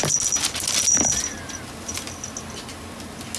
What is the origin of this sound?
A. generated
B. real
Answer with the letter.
B